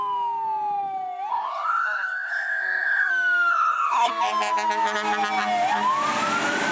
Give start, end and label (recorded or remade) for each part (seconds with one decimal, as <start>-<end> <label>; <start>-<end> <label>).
0.0-1.3 recorded; 1.3-3.1 remade; 3.1-3.5 recorded; 3.5-4.1 remade; 4.1-6.7 recorded